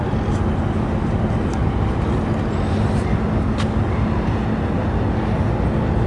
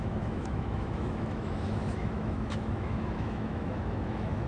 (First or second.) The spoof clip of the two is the second